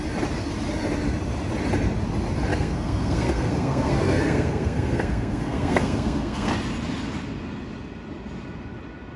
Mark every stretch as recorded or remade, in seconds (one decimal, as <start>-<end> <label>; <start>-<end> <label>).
0.0-2.5 recorded; 2.5-6.5 remade; 6.5-9.2 recorded